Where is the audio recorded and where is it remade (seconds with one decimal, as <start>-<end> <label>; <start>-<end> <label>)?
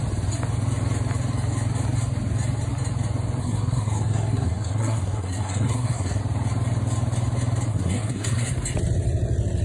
0.0-3.4 recorded; 3.4-6.2 remade; 6.2-7.7 recorded; 7.7-8.5 remade; 8.5-9.6 recorded